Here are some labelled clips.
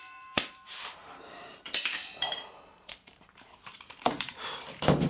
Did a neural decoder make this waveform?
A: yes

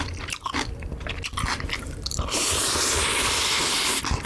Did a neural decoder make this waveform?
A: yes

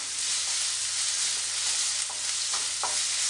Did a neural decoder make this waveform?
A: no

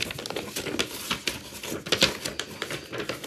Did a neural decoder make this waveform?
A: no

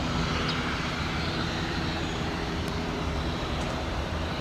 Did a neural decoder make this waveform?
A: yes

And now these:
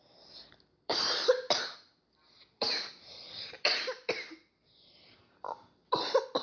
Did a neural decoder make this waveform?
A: yes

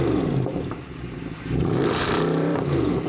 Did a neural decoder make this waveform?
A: yes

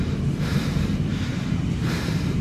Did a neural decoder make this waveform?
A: yes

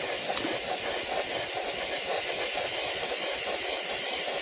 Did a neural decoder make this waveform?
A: no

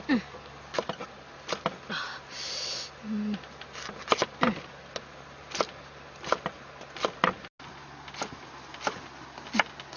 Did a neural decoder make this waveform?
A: no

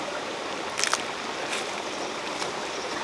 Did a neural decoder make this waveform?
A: no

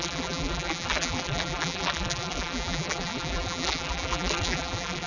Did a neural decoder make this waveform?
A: yes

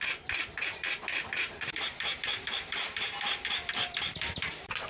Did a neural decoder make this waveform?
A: yes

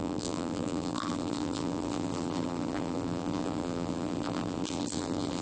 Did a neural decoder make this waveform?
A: yes